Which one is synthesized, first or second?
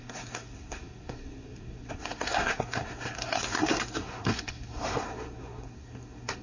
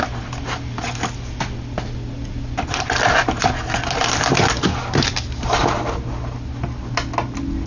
first